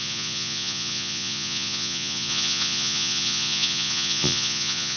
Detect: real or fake fake